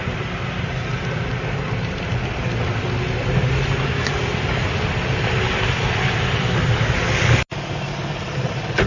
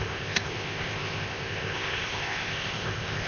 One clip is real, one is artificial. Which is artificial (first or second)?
second